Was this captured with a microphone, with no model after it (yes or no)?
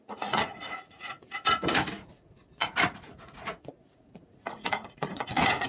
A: no